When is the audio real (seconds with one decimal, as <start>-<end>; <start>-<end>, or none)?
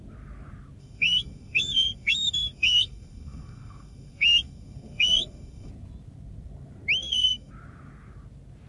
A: 0.0-0.8; 5.7-7.0; 7.5-8.7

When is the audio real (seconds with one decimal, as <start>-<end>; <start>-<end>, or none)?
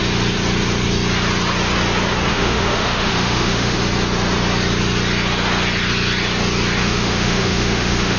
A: 0.0-2.3; 3.8-6.8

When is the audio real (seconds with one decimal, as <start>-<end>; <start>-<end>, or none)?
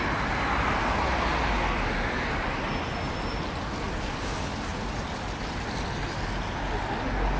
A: 0.0-4.7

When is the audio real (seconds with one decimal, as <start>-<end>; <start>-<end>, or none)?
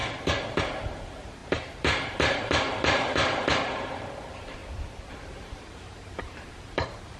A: 0.0-0.6; 4.6-5.3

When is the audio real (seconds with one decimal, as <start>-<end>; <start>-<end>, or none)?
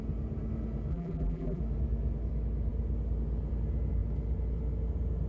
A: 0.0-0.9; 1.6-5.3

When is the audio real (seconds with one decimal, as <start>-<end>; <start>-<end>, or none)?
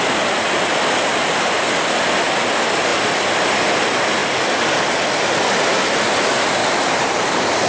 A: 0.0-6.6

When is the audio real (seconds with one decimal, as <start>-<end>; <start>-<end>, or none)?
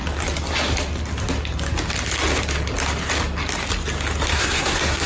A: 0.0-4.3